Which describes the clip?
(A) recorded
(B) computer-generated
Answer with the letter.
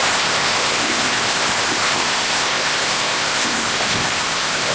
B